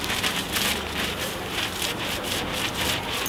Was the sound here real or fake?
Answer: fake